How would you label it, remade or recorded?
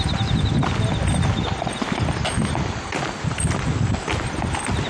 recorded